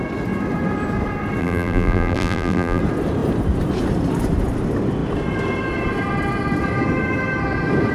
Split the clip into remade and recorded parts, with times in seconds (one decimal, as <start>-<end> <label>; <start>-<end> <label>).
0.0-1.4 recorded; 1.4-2.8 remade; 2.8-7.9 recorded